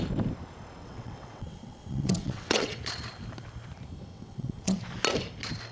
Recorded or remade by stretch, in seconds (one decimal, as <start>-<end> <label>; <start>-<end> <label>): 0.0-0.8 recorded; 0.8-2.8 remade; 2.8-4.1 recorded; 4.1-4.8 remade; 4.8-5.7 recorded